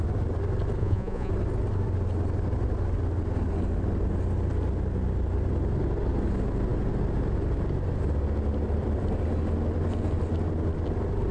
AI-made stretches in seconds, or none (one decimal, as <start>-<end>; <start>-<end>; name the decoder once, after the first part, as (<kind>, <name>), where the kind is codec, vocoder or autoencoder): 0.8-1.3 (vocoder, Vocos)